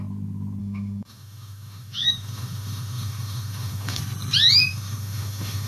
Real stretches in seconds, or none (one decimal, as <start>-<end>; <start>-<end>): 0.0-0.6; 4.0-4.7